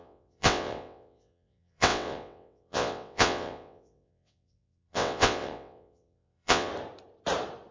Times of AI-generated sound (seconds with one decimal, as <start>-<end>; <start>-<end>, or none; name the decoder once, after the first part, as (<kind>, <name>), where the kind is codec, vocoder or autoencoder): 0.0-6.7 (vocoder, WaveNeXt)

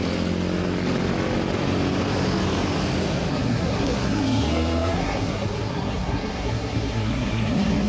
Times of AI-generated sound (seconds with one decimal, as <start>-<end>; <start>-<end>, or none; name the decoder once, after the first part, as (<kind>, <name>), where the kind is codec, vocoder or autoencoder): 3.3-7.9 (codec, SNAC)

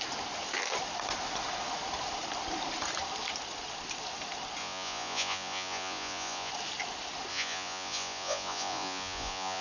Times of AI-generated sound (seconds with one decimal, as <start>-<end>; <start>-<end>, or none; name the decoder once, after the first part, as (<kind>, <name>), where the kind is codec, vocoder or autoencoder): 4.6-6.5 (vocoder, Vocos); 7.3-9.6

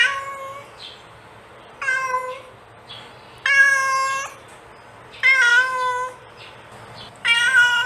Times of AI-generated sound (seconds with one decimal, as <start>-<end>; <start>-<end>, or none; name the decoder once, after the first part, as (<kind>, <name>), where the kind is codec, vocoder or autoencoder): 5.5-6.2 (autoencoder, DAC-VAE)